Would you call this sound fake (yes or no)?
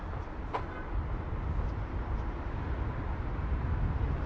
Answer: no